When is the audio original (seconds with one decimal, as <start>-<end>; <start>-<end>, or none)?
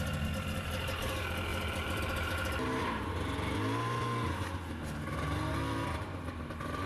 0.0-6.9